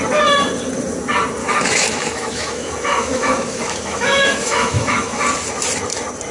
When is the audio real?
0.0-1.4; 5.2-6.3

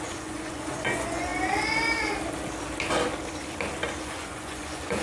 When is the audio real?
1.3-4.0

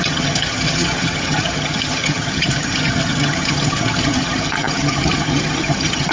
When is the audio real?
none